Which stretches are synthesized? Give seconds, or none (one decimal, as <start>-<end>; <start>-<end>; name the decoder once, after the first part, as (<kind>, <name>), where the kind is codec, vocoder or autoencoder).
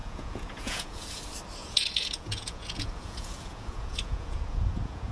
0.0-1.2 (vocoder, Vocos); 1.6-5.1